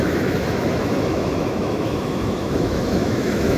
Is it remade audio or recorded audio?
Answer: remade